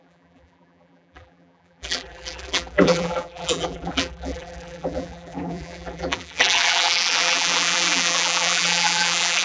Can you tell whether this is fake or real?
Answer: fake